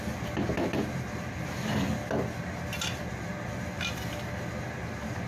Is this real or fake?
real